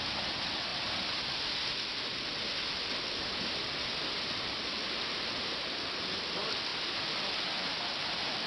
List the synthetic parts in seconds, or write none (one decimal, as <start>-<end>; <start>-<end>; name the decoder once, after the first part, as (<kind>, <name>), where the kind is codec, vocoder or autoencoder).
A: none